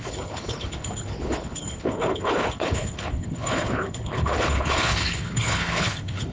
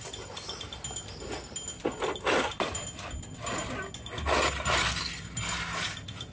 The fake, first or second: first